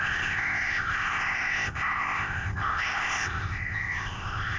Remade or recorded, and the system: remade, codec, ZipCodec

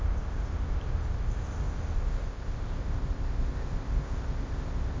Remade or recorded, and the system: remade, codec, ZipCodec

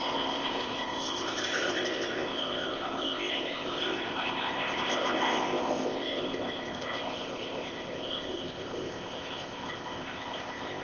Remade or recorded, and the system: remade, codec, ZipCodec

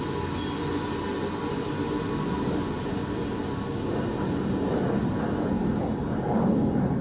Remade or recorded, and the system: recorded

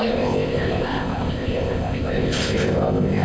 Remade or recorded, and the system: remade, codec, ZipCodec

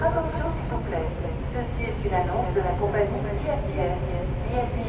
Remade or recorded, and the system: recorded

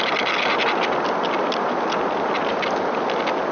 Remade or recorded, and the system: recorded